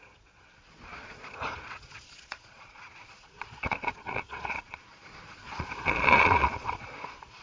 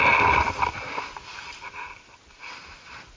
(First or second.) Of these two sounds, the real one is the second